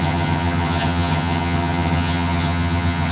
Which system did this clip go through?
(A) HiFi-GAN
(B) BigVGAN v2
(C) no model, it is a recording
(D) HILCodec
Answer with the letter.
A